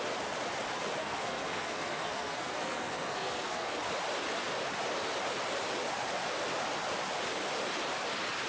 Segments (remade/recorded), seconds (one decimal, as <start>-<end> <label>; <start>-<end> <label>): 0.0-1.0 recorded; 1.0-3.8 remade; 3.8-8.5 recorded